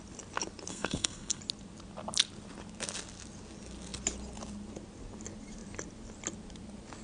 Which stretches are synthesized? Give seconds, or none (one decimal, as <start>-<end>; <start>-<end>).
0.7-1.4